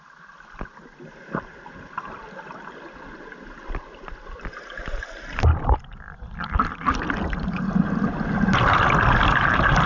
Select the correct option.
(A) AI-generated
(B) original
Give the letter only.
B